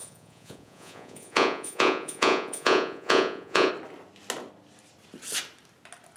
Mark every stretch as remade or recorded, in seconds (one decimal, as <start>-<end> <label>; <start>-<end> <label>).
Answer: 0.0-3.7 remade; 3.7-6.2 recorded

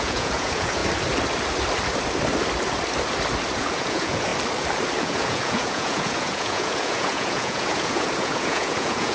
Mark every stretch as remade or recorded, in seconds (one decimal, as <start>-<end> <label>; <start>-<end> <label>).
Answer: 0.0-0.8 remade; 0.8-3.6 recorded; 3.6-4.3 remade; 4.3-5.0 recorded; 5.0-9.1 remade

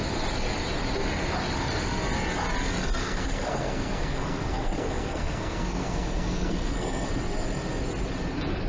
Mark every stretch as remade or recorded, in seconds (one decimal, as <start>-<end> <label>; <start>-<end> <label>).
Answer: 0.0-3.0 recorded; 3.0-7.1 remade; 7.1-8.7 recorded

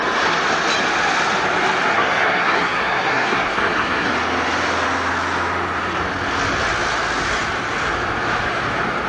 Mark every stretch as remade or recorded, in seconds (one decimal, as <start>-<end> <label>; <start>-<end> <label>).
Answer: 0.0-1.9 recorded; 1.9-4.1 remade; 4.1-9.1 recorded

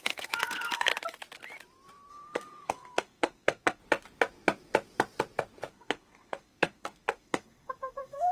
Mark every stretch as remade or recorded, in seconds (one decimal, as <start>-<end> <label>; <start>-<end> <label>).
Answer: 0.0-0.9 remade; 0.9-2.1 recorded; 2.1-3.8 remade; 3.8-5.7 recorded; 5.7-8.3 remade